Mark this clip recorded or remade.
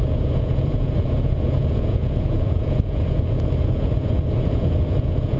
remade